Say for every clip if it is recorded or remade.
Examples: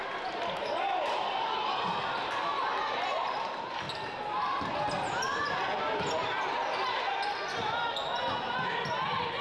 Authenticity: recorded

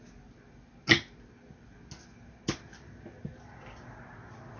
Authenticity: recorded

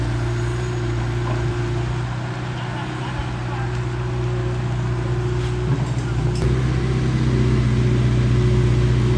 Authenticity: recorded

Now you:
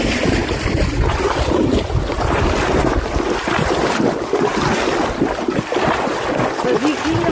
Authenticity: recorded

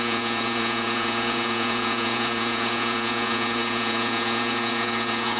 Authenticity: remade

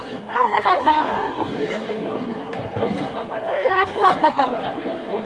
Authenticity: remade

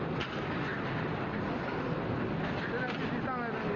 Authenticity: recorded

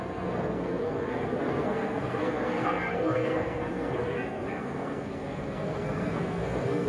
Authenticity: remade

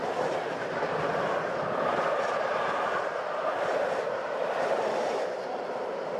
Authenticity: recorded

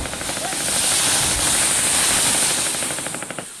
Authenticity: recorded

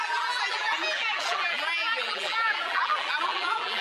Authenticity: remade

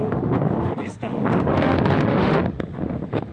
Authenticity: remade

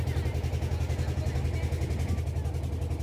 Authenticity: recorded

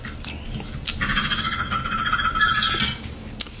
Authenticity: recorded